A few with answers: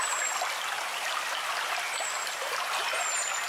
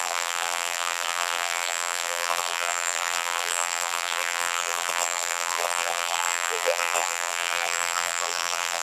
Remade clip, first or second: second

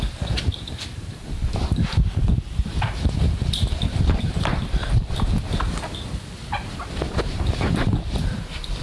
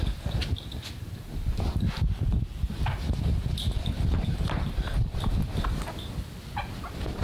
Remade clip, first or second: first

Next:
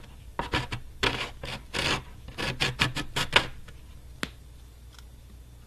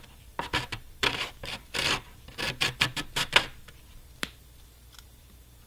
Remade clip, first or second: second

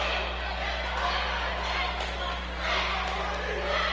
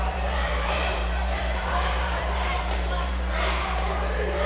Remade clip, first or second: second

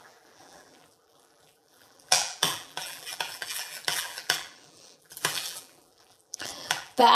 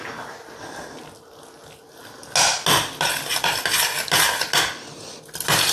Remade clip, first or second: first